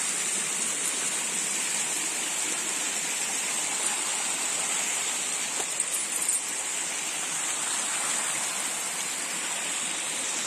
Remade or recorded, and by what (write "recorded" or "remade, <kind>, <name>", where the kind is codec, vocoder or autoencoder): recorded